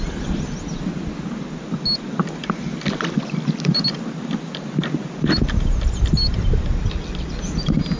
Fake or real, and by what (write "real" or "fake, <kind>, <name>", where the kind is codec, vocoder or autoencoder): real